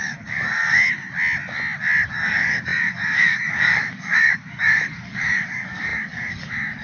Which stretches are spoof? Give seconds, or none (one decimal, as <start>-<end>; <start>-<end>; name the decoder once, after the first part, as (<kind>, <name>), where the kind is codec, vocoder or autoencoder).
0.0-0.6 (codec, DAC); 2.1-6.8